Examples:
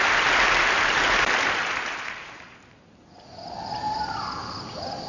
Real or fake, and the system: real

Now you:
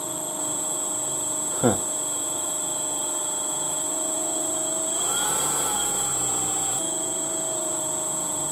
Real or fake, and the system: real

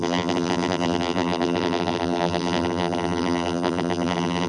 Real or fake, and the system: fake, vocoder, BigVGAN v2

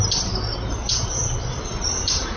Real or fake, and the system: real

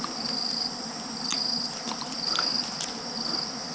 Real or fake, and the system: real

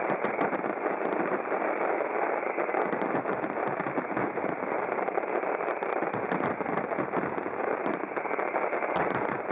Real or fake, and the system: fake, vocoder, BigVGAN v2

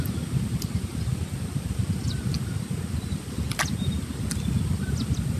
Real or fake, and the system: real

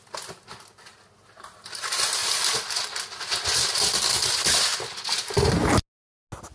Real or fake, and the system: real